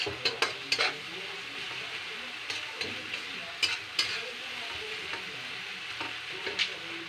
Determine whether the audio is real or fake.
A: real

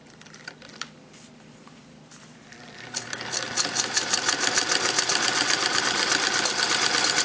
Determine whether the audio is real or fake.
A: fake